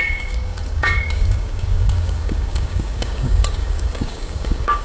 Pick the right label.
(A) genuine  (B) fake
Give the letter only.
B